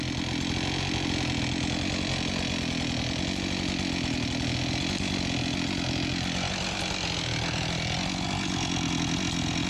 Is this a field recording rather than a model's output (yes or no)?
yes